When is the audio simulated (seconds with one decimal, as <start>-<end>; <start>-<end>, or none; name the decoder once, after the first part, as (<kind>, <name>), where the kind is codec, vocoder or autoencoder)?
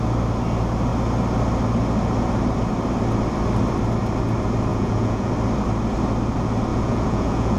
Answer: 4.7-5.3 (vocoder, Vocos); 6.7-7.6